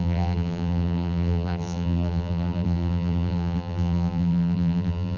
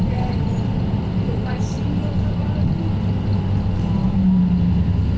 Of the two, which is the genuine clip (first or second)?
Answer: second